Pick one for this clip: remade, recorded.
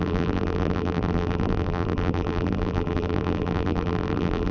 remade